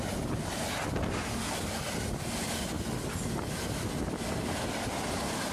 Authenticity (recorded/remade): recorded